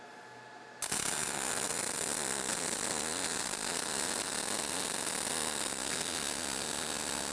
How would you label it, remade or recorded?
recorded